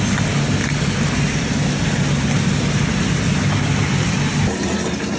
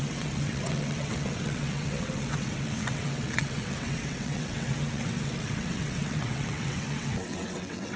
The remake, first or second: second